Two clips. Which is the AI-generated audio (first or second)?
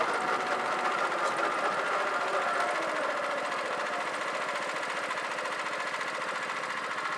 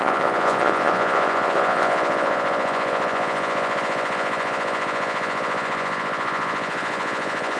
second